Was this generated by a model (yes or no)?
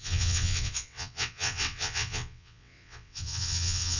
yes